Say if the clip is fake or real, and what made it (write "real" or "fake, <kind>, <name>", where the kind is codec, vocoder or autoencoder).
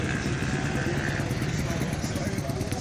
real